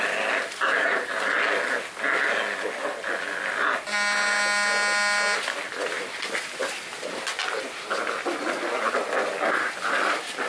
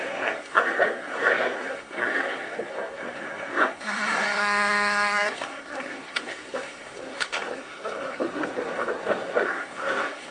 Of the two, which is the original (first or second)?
first